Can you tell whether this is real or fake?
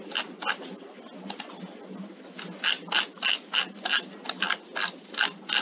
real